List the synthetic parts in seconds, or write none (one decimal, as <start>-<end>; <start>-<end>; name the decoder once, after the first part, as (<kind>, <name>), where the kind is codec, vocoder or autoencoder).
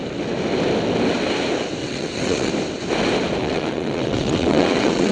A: 1.8-2.5 (vocoder, WaveNeXt); 3.4-5.1